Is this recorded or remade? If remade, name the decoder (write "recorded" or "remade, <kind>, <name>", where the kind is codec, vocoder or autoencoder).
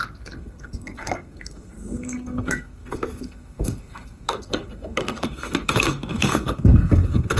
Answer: remade, codec, SNAC